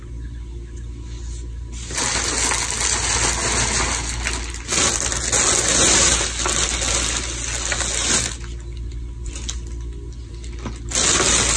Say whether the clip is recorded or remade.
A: recorded